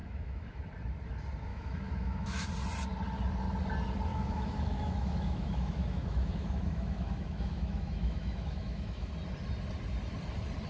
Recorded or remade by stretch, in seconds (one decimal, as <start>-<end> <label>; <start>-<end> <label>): 0.0-0.6 remade; 0.6-1.5 recorded; 1.5-2.5 remade; 2.5-4.1 recorded; 4.1-9.1 remade; 9.1-10.7 recorded